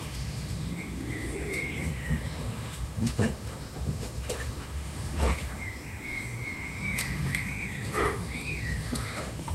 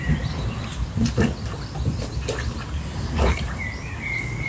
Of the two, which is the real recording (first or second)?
second